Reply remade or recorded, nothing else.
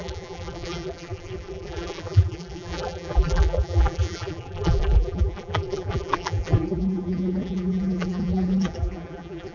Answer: remade